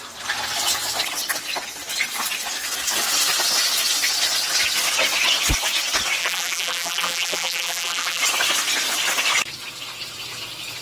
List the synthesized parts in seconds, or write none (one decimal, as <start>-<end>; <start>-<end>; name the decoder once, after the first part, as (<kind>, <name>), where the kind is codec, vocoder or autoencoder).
6.2-8.2 (vocoder, BigVGAN v2)